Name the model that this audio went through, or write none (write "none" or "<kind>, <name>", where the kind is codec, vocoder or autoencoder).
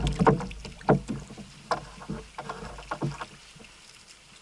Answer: none